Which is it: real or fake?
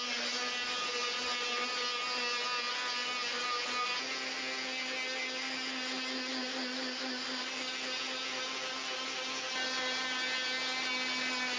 real